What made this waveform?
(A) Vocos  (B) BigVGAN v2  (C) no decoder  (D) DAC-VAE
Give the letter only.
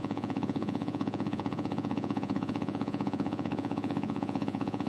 A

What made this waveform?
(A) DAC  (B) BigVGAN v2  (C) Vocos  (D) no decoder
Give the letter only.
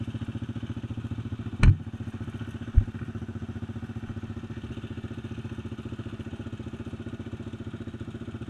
D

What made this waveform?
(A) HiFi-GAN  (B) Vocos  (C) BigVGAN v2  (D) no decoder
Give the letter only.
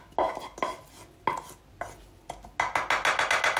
D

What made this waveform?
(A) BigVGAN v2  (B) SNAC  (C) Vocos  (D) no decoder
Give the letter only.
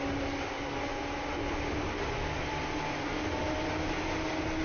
D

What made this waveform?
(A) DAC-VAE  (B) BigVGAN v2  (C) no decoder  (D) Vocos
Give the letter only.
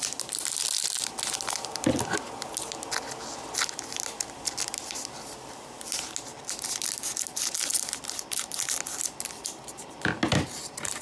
C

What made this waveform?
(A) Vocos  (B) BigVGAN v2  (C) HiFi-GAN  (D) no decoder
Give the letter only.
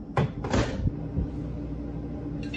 D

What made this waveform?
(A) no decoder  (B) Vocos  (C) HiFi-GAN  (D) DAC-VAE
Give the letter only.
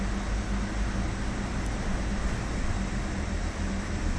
A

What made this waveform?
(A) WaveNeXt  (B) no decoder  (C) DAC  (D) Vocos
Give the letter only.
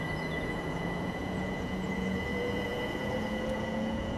D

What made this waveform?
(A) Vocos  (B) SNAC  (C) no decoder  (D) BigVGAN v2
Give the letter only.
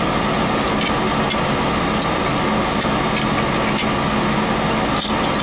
C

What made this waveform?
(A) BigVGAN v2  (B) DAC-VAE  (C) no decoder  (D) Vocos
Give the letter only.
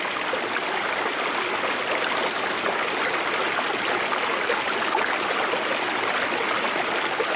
C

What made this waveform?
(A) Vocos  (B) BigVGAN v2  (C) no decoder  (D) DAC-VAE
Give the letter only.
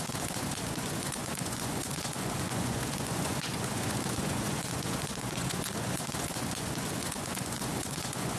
A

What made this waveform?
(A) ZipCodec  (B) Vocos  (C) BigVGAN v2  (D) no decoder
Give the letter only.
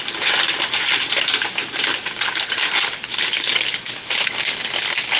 D